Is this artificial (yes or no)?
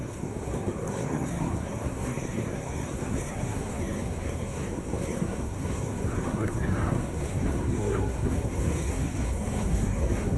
yes